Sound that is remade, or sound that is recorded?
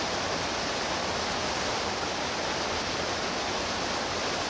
recorded